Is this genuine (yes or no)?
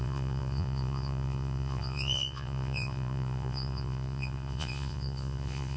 no